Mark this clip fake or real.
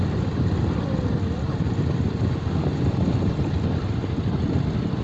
fake